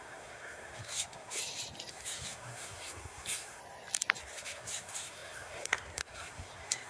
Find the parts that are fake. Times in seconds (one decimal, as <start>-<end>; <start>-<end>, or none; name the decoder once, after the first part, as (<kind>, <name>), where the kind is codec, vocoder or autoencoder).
0.0-1.4 (codec, SNAC); 1.9-3.6; 4.2-6.9